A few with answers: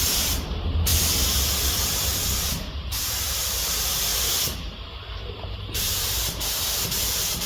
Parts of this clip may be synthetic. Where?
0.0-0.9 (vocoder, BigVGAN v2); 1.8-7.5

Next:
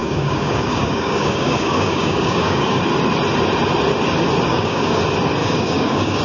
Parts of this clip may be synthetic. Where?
0.0-2.8 (codec, DAC); 4.5-5.0; 5.4-6.2

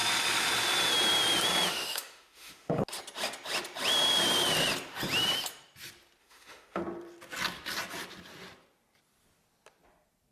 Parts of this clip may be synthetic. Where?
1.7-2.8 (autoencoder, DAC-VAE); 6.2-6.8

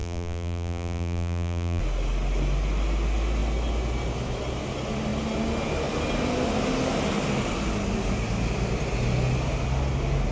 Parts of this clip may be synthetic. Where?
0.0-1.8 (vocoder, BigVGAN v2)

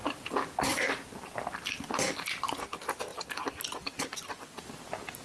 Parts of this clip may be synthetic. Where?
0.0-0.9 (vocoder, BigVGAN v2); 3.1-4.7

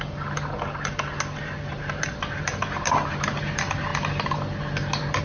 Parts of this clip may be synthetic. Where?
none